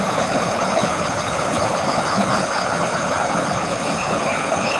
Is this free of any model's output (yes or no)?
no